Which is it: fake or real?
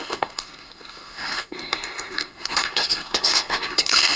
fake